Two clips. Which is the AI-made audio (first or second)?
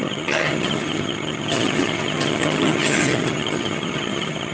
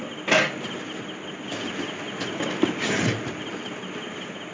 first